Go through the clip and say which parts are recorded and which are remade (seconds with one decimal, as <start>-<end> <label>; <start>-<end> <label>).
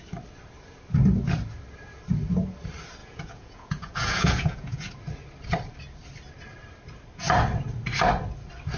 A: 0.0-3.0 recorded; 3.0-4.9 remade; 4.9-8.8 recorded